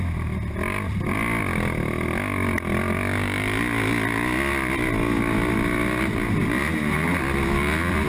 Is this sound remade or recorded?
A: recorded